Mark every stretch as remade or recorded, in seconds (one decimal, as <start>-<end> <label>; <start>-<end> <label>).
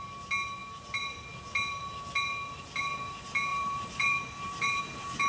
0.0-3.5 recorded; 3.5-4.8 remade; 4.8-5.3 recorded